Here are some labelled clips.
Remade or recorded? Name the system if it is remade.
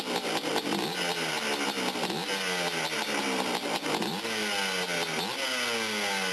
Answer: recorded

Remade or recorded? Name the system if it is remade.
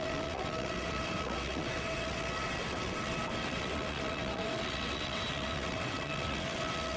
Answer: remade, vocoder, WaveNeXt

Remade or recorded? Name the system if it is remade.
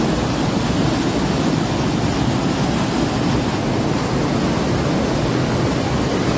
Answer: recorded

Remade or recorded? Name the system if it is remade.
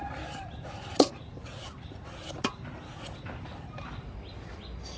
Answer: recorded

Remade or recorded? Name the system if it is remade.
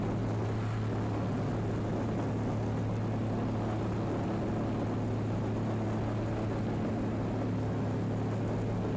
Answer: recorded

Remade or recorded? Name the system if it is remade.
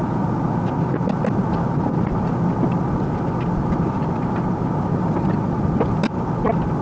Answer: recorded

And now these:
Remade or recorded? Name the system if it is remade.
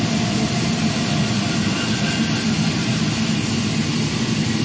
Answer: recorded